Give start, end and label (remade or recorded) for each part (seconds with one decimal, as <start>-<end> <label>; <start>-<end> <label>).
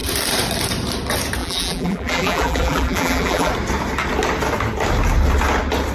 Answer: 0.0-1.4 recorded; 1.4-3.5 remade; 3.5-5.9 recorded